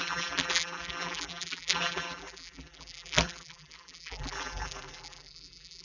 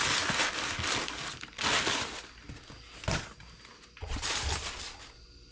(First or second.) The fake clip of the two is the first